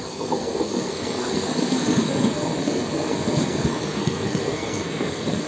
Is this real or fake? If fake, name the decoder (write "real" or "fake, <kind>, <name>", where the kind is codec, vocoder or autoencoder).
fake, codec, SNAC